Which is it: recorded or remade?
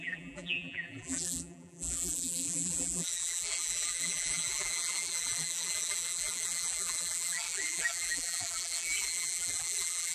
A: remade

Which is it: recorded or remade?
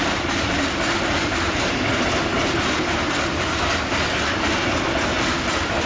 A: recorded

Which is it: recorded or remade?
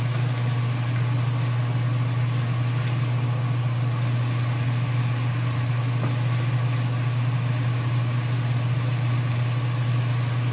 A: recorded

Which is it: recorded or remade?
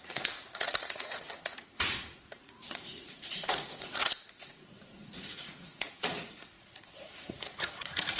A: remade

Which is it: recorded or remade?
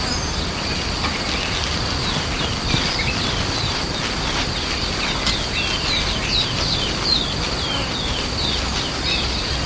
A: recorded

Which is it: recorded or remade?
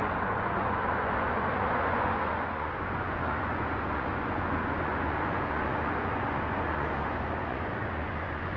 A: remade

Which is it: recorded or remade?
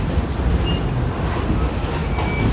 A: recorded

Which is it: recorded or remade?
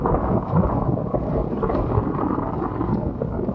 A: remade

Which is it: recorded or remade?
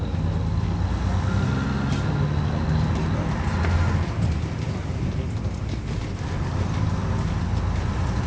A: recorded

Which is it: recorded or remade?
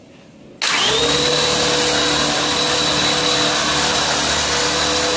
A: recorded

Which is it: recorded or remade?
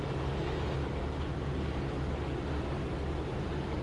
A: recorded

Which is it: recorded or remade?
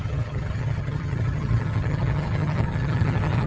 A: remade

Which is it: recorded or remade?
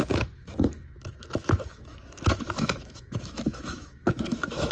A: remade